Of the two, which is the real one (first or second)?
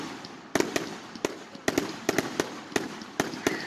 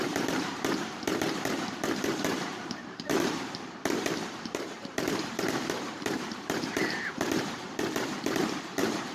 first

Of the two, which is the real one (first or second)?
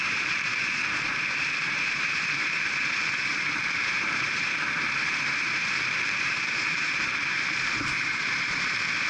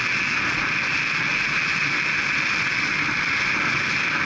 second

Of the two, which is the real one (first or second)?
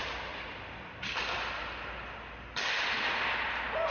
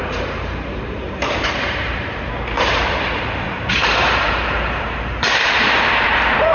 first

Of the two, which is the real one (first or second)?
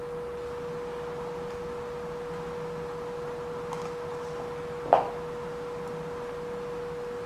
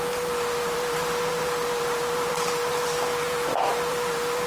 first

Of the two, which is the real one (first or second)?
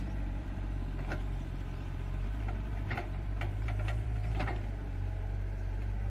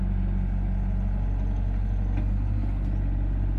second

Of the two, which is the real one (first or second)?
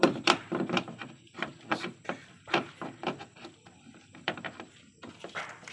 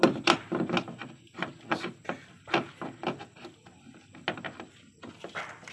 second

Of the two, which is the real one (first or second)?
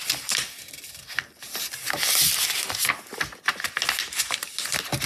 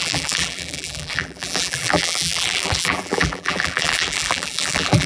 first